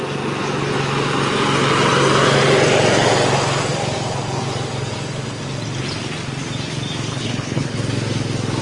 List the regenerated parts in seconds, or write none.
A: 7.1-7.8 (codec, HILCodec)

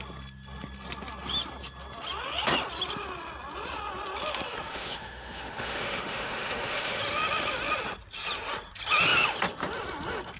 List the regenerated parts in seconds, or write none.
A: 4.7-7.0 (autoencoder, DAC-VAE)

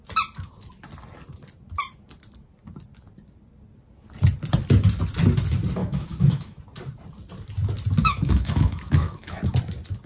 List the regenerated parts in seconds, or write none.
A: 5.8-6.6 (autoencoder, DAC-VAE); 8.0-9.4

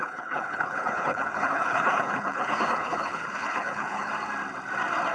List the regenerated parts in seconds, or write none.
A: 0.0-4.1 (codec, HILCodec)

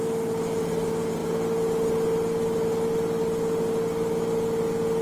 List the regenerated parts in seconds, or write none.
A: none

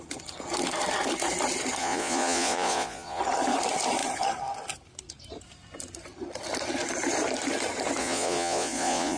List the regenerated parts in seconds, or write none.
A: 1.8-3.2 (vocoder, Vocos); 8.0-9.2